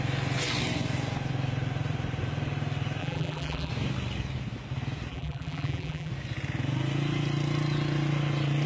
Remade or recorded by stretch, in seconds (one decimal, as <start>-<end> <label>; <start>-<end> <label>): 0.0-3.0 recorded; 3.0-3.7 remade; 3.7-5.1 recorded; 5.1-6.1 remade; 6.1-8.7 recorded